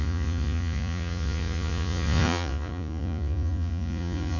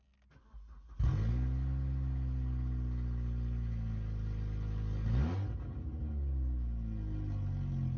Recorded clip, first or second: second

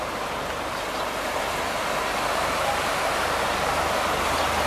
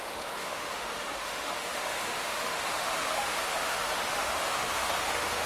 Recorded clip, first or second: first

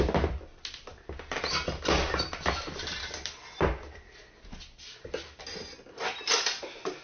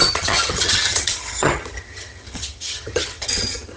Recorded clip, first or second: first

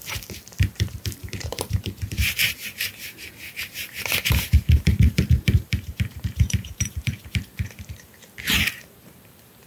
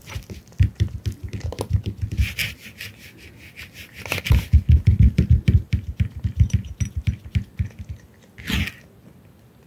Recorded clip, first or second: second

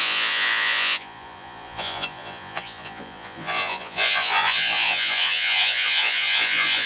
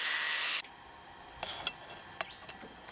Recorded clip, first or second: second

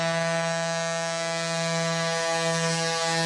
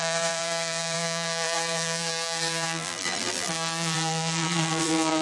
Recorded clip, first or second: first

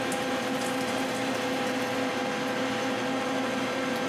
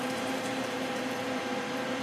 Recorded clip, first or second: first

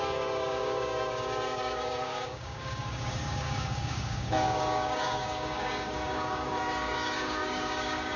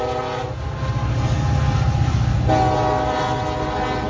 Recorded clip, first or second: second